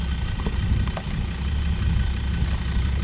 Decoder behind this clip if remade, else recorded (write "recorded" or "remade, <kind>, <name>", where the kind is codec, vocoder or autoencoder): recorded